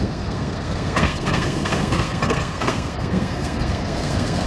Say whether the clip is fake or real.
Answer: fake